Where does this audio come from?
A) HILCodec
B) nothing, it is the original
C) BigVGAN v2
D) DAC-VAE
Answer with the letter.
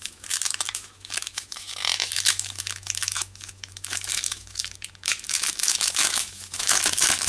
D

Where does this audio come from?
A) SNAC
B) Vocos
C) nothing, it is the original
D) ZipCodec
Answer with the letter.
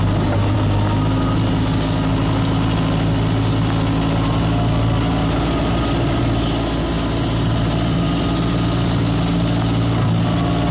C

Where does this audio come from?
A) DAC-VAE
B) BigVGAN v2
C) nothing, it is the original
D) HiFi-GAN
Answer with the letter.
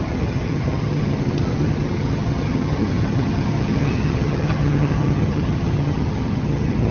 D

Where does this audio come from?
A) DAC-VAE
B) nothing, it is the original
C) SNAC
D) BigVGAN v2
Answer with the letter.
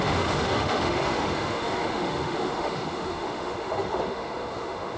A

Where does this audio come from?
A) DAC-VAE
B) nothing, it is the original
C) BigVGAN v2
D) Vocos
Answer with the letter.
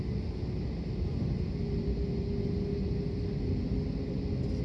B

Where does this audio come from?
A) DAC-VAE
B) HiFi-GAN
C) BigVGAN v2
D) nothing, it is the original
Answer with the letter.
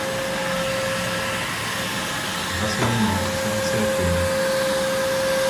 D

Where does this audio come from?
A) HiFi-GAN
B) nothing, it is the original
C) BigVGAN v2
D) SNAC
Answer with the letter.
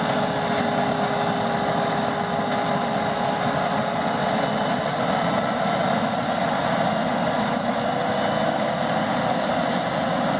B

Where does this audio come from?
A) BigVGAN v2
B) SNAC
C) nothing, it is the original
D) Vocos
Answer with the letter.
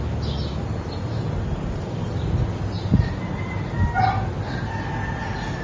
C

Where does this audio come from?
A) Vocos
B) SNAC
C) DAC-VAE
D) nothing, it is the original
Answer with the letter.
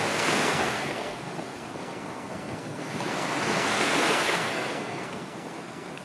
B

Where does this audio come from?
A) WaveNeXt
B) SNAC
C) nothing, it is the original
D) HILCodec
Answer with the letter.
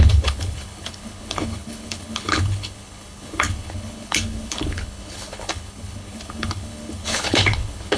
D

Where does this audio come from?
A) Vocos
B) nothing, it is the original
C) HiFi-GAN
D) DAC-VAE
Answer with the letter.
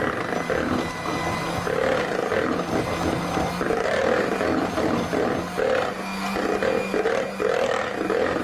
B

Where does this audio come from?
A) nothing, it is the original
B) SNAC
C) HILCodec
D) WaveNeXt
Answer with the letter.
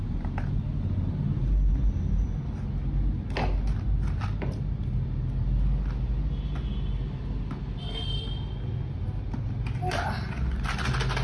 A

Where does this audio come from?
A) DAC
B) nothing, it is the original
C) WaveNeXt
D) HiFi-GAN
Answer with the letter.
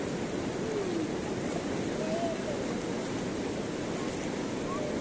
B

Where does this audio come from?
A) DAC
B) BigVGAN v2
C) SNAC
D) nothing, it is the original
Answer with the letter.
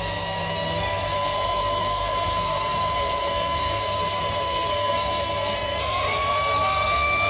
C